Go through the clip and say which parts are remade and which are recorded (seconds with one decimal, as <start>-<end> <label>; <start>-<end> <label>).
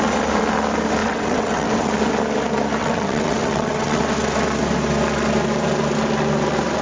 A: 0.0-1.0 recorded; 1.0-1.9 remade; 1.9-2.8 recorded; 2.8-4.0 remade; 4.0-6.8 recorded